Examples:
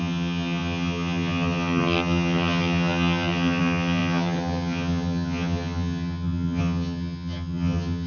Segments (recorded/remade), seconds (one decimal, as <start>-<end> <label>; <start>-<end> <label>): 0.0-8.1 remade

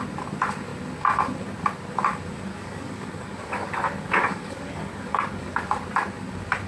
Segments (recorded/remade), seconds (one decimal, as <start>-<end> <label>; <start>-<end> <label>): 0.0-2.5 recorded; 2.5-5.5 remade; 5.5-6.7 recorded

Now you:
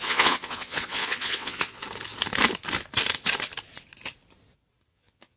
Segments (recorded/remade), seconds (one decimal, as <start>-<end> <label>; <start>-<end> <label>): 0.0-1.8 remade; 1.8-4.9 recorded; 4.9-5.4 remade

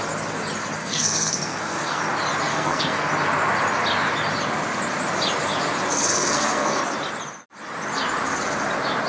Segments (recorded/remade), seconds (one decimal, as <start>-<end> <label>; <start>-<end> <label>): 0.0-0.8 recorded; 0.8-2.0 remade; 2.0-2.5 recorded; 2.5-3.1 remade; 3.1-5.9 recorded; 5.9-6.8 remade; 6.8-9.1 recorded

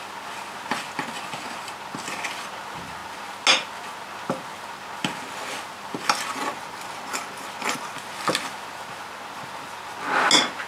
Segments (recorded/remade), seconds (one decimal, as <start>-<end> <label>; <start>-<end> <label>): 0.0-10.7 recorded

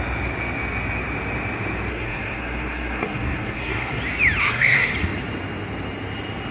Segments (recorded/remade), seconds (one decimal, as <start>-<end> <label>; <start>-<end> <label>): 0.0-1.9 recorded; 1.9-4.0 remade; 4.0-4.4 recorded; 4.4-4.9 remade; 4.9-6.5 recorded